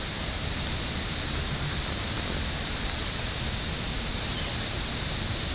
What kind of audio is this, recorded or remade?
recorded